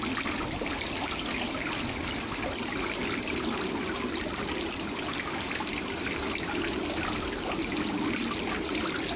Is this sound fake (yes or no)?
no